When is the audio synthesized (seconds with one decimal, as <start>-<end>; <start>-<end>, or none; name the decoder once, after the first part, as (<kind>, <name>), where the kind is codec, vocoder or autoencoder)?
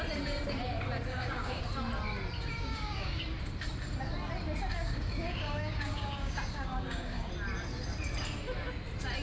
1.1-1.6 (codec, DAC); 2.5-3.2; 4.7-7.3